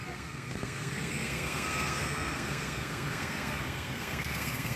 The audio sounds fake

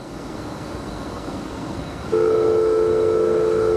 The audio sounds fake